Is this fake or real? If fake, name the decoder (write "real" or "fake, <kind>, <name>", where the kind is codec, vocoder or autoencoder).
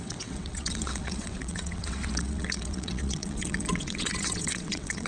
fake, vocoder, WaveNeXt